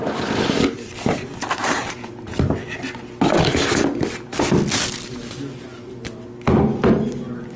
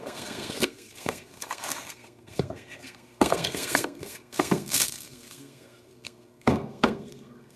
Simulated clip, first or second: second